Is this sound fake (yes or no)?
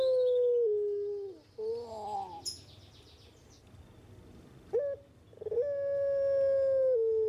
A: no